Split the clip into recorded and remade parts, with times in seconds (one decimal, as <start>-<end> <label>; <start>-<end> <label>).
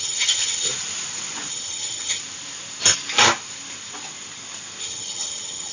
0.0-0.7 remade; 0.7-1.5 recorded; 1.5-2.2 remade; 2.2-4.8 recorded; 4.8-5.7 remade